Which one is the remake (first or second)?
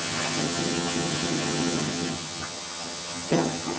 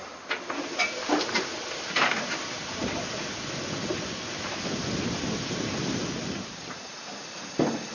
first